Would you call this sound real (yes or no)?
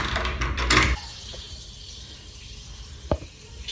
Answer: no